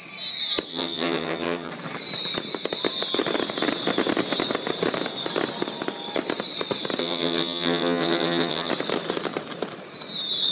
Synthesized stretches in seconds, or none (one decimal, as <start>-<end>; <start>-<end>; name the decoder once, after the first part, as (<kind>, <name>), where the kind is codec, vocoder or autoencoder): 0.7-1.7 (vocoder, HiFi-GAN); 7.0-8.7